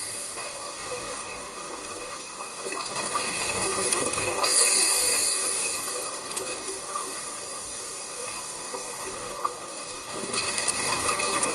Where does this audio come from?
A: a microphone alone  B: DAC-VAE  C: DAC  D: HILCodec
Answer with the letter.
C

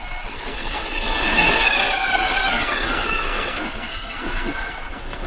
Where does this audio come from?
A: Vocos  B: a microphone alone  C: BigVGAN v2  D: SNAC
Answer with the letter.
D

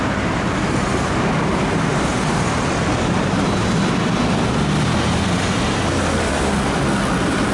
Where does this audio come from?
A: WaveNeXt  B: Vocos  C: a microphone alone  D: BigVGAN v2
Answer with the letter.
C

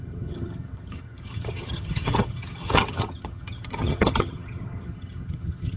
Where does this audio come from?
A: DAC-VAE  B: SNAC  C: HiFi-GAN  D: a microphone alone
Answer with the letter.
C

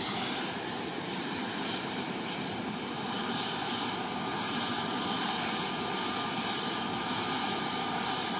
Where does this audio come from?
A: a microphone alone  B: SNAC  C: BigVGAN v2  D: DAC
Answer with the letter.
C